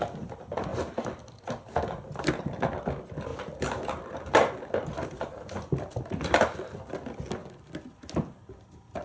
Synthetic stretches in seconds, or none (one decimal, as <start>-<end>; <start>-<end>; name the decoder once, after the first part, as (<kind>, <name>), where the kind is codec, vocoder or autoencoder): none